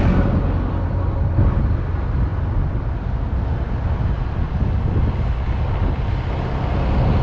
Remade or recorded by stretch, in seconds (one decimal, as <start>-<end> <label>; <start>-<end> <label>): 0.0-7.2 recorded